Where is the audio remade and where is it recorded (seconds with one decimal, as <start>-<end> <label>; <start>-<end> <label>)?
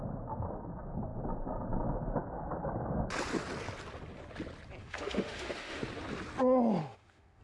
0.0-4.8 recorded; 4.8-5.8 remade; 5.8-6.8 recorded; 6.8-7.4 remade